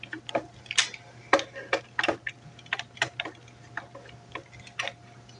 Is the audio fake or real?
real